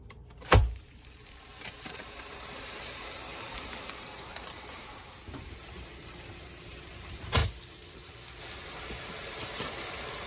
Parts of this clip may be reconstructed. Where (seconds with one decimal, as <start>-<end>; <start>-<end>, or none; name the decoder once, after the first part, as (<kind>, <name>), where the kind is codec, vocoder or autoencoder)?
0.0-3.3 (vocoder, BigVGAN v2); 3.9-7.4; 8.4-10.3